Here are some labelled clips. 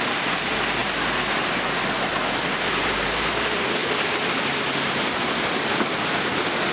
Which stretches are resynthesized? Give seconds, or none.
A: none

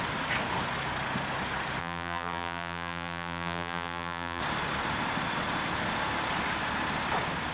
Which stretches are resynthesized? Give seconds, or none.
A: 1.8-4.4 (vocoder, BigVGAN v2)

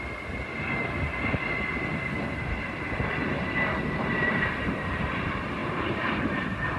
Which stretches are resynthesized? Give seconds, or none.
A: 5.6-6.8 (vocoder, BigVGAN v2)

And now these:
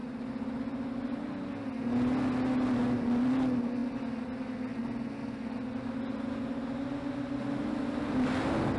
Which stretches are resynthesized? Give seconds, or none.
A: none

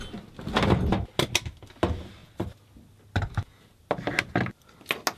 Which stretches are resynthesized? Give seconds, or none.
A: none